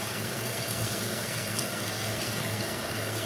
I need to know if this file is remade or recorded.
remade